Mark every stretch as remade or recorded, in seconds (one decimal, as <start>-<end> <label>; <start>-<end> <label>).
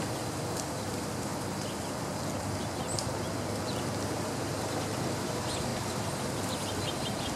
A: 0.0-1.3 remade; 1.3-4.1 recorded; 4.1-7.4 remade